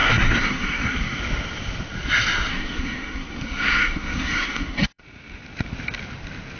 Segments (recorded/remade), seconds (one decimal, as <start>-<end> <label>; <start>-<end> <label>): 0.0-1.2 remade; 1.2-2.5 recorded; 2.5-5.0 remade; 5.0-6.6 recorded